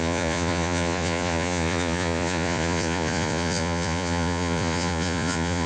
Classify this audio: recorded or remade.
remade